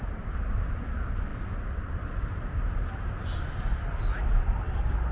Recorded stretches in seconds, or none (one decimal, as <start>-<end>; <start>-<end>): 0.0-5.1